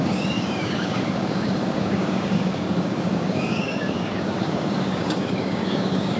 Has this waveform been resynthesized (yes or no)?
yes